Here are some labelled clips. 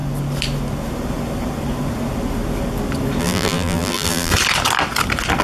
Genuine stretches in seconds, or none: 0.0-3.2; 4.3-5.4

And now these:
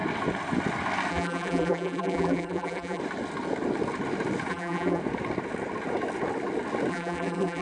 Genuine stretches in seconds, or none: 0.0-1.1; 3.0-4.5; 5.0-6.9